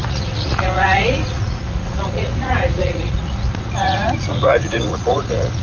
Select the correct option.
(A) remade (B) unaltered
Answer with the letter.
A